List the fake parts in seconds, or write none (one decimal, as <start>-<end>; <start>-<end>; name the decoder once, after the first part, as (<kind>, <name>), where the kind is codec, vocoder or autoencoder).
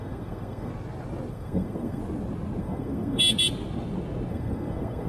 0.0-0.7 (codec, SNAC); 1.3-2.0; 2.6-3.2; 4.3-5.1